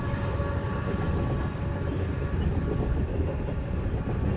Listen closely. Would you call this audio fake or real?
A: real